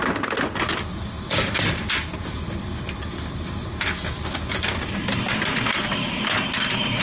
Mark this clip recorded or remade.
recorded